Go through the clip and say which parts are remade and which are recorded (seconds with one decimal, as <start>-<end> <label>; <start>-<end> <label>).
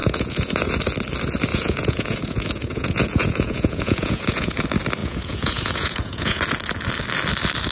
0.0-0.7 remade; 0.7-1.5 recorded; 1.5-4.6 remade; 4.6-5.0 recorded; 5.0-6.4 remade; 6.4-7.7 recorded